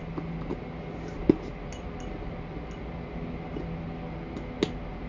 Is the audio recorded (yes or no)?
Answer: yes